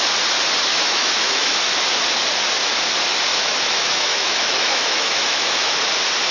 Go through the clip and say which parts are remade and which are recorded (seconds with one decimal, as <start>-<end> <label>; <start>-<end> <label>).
0.0-0.7 recorded; 0.7-1.6 remade; 1.6-3.3 recorded; 3.3-5.7 remade; 5.7-6.3 recorded